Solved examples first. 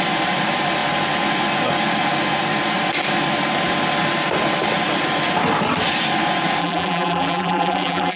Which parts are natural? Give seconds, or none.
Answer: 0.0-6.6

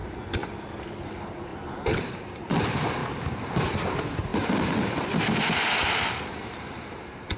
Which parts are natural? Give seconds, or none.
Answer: 0.0-0.8; 3.0-3.9

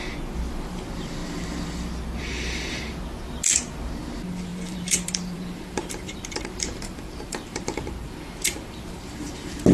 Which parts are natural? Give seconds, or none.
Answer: 0.0-4.5; 8.1-9.7

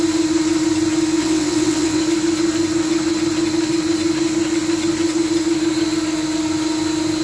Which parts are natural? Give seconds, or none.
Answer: 0.0-1.2; 2.0-7.2

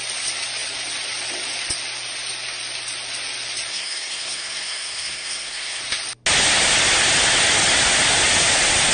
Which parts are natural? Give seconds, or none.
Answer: 0.0-3.7; 5.8-8.9

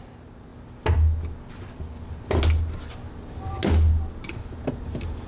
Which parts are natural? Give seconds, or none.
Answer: 0.0-5.3